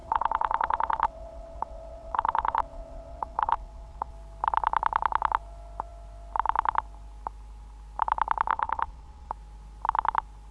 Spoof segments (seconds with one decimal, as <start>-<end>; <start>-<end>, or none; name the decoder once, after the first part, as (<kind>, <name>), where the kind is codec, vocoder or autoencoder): 0.0-4.1 (vocoder, WaveNeXt); 8.5-9.3